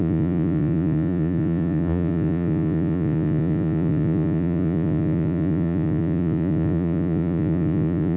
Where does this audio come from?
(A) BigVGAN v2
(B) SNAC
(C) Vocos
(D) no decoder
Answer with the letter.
C